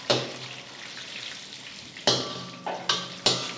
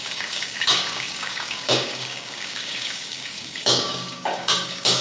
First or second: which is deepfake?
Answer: second